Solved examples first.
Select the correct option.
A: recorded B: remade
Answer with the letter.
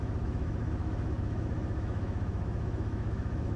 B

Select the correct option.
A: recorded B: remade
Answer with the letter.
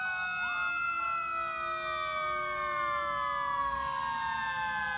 A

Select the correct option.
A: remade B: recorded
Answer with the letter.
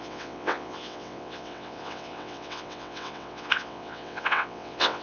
A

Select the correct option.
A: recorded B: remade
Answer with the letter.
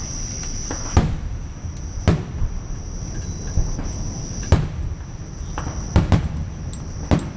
A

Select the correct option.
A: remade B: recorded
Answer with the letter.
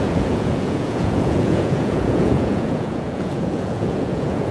A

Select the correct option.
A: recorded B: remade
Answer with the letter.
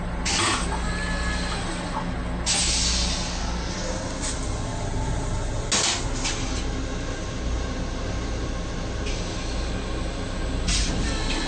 A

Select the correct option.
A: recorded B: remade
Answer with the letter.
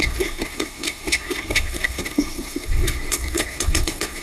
B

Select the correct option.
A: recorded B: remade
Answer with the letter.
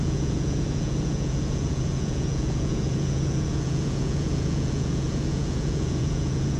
B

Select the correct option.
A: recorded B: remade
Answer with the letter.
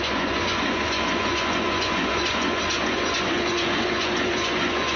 B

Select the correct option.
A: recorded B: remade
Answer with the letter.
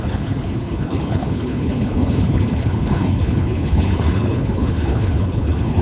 B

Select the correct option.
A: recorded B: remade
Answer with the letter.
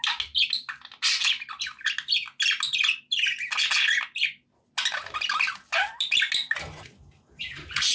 A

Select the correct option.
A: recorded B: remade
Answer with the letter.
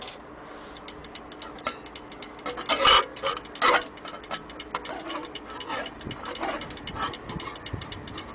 A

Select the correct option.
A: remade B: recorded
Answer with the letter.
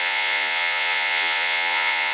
A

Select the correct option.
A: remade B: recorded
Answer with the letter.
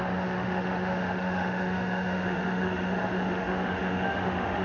A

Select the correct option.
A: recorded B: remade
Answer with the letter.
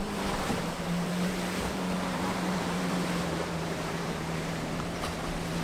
B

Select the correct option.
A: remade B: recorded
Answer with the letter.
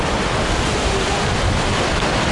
B